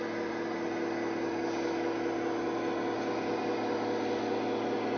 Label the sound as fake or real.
real